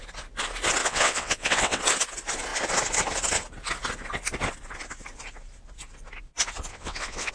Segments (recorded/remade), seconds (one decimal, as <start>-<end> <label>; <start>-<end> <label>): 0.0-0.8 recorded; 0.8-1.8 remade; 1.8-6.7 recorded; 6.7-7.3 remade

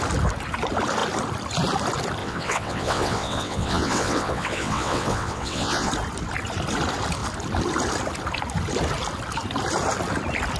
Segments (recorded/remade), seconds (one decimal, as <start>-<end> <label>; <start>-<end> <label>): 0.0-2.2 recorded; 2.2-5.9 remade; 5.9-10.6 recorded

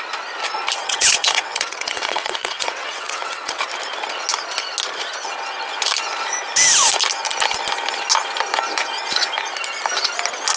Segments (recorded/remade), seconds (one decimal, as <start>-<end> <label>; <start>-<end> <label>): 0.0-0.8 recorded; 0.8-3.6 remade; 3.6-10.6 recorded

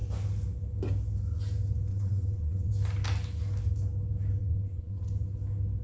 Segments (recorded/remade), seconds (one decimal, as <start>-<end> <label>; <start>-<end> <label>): 0.0-1.9 recorded; 1.9-2.7 remade; 2.7-4.4 recorded; 4.4-5.0 remade; 5.0-5.8 recorded